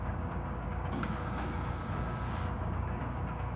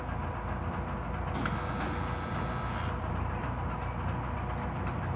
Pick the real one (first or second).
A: second